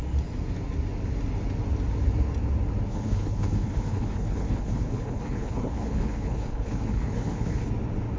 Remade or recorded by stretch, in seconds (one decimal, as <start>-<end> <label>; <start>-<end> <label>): 0.0-2.9 recorded; 2.9-7.7 remade; 7.7-8.2 recorded